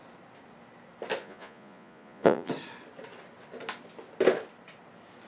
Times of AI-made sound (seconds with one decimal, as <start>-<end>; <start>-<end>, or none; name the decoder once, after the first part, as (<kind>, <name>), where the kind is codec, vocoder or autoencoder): 1.2-2.5 (vocoder, Vocos)